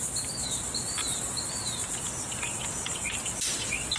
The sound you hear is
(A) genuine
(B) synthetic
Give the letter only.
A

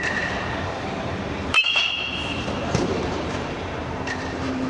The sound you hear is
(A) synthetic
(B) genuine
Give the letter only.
A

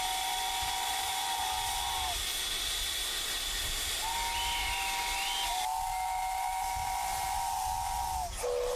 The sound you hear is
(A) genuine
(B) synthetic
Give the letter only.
A